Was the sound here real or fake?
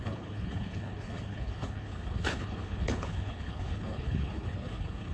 fake